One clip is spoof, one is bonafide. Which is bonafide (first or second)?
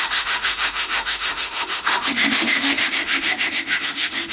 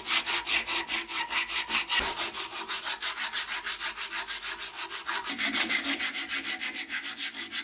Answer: second